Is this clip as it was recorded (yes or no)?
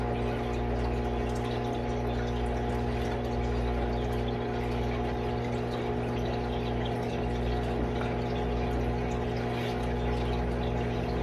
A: yes